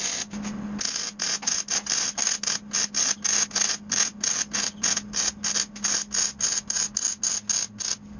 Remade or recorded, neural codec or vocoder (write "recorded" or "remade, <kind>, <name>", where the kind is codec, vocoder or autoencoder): recorded